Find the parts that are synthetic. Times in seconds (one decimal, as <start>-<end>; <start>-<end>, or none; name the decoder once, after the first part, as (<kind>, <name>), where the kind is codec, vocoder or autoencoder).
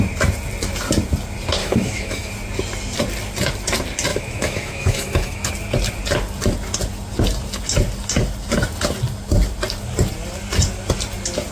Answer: 1.6-2.3 (autoencoder, DAC-VAE); 4.1-5.5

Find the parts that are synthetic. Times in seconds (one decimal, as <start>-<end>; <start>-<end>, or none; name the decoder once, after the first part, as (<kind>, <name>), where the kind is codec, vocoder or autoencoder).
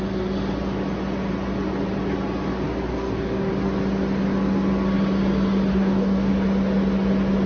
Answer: 2.9-3.5 (codec, DAC); 5.7-6.3